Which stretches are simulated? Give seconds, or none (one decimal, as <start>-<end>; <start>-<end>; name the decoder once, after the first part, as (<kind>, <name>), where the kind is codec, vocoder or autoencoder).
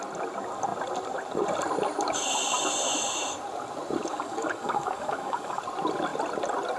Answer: 4.1-5.6 (codec, DAC)